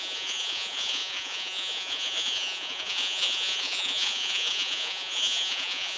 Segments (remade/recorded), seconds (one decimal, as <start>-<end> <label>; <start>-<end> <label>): 0.0-6.0 remade